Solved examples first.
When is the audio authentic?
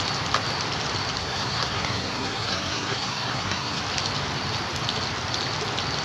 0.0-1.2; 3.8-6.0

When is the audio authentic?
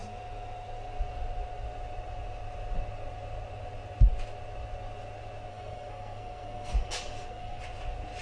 0.0-5.5; 7.6-8.2